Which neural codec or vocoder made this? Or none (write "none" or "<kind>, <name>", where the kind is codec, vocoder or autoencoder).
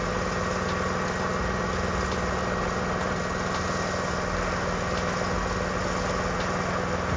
none